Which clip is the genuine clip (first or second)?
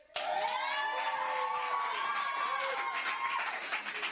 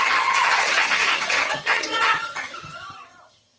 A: first